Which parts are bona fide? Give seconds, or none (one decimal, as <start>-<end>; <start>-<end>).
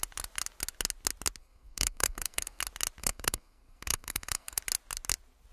0.0-1.4; 2.6-3.0; 4.6-5.5